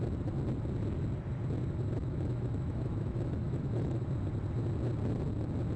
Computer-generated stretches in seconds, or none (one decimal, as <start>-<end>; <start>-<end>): 2.0-4.0

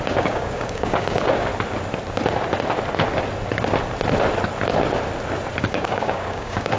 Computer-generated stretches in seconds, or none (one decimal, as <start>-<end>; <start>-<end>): 0.0-1.5; 5.6-6.8

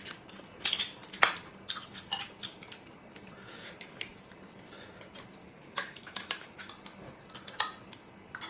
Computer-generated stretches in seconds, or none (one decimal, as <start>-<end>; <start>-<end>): 5.4-6.7